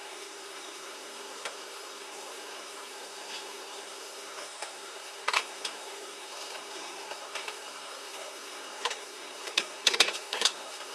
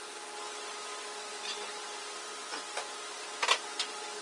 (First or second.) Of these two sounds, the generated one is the first